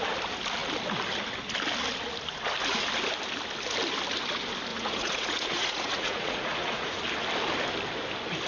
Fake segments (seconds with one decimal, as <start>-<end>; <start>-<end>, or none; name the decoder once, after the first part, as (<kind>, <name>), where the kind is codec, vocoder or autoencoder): 4.7-7.0 (vocoder, Vocos)